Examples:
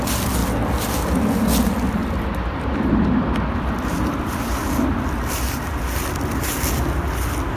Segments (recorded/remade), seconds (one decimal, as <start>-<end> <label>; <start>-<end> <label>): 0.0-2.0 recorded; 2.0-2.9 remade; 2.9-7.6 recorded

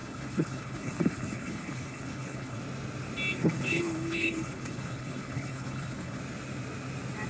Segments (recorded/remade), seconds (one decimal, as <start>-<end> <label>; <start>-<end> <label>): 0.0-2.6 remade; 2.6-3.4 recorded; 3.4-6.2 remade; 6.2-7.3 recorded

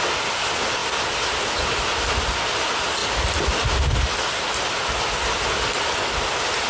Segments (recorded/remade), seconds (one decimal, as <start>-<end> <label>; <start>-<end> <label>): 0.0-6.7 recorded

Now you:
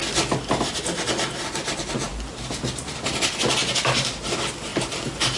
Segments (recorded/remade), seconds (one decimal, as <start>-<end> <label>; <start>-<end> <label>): 0.0-5.4 recorded